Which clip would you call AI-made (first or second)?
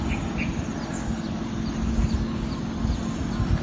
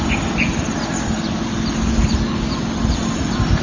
second